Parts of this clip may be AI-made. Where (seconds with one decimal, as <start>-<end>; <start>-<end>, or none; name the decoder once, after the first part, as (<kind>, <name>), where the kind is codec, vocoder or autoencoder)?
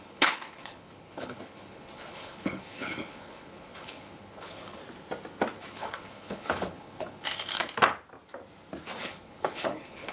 0.0-4.8 (codec, HILCodec); 5.7-7.6; 9.0-10.1